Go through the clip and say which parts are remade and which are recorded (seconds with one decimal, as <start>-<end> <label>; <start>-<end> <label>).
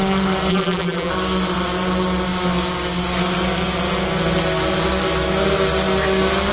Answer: 0.0-0.5 recorded; 0.5-1.1 remade; 1.1-6.5 recorded